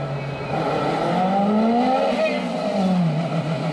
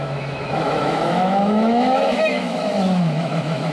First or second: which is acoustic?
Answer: first